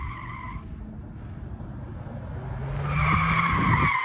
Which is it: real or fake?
real